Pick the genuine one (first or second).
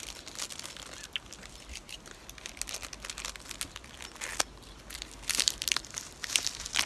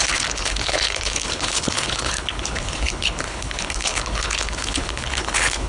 first